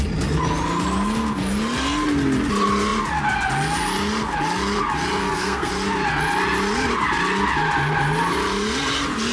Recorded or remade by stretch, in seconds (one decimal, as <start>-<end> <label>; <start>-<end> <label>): 0.0-5.2 recorded; 5.2-5.7 remade; 5.7-9.3 recorded